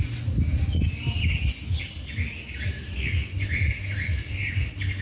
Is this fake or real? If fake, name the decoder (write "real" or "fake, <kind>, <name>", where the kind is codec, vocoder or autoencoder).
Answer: real